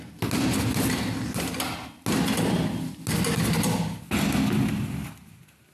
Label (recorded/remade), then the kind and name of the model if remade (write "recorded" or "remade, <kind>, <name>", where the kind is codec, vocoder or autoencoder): recorded